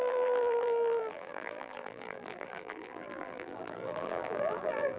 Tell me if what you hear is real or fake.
fake